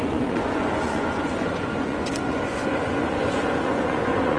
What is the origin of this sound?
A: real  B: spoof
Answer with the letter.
B